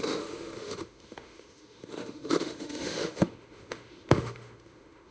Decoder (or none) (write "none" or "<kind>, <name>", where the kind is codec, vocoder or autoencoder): autoencoder, DAC-VAE